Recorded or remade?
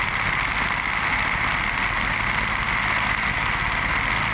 recorded